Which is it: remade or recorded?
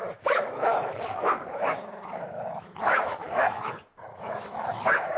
remade